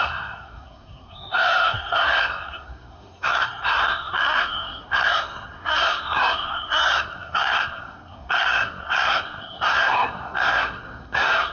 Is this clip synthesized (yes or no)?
yes